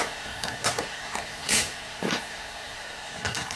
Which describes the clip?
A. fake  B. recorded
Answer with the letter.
A